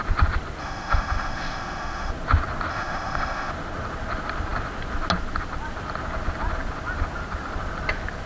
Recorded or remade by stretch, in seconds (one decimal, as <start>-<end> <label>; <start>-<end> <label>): 0.0-0.6 recorded; 0.6-2.1 remade; 2.1-2.7 recorded; 2.7-3.5 remade; 3.5-8.3 recorded